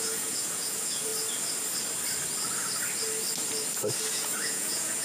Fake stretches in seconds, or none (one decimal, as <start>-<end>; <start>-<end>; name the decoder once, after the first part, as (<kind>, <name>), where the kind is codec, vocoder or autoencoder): 0.0-1.1 (vocoder, Vocos); 4.1-5.0